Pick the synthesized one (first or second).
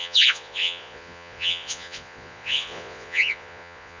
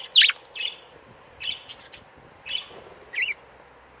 first